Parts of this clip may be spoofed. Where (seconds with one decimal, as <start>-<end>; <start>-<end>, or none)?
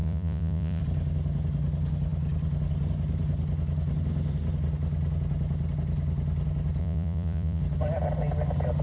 0.0-0.8; 6.8-7.6